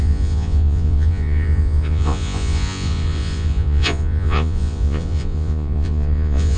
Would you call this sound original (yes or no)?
no